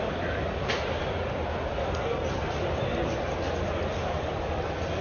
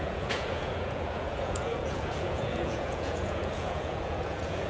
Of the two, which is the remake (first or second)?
second